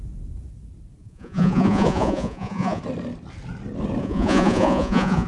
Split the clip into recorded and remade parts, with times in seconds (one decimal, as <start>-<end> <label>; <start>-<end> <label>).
0.0-1.0 recorded; 1.0-2.8 remade; 2.8-4.0 recorded; 4.0-5.3 remade